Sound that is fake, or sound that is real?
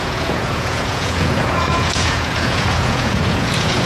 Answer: fake